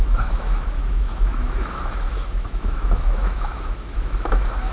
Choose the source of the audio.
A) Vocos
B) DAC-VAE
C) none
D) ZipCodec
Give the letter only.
B